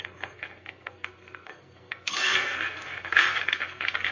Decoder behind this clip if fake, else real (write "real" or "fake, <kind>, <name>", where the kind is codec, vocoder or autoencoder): fake, codec, SNAC